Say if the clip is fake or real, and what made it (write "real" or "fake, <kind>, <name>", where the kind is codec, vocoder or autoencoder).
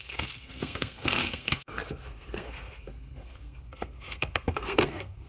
fake, codec, SNAC